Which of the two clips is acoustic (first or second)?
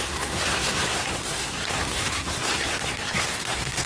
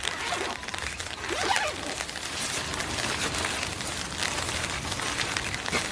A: second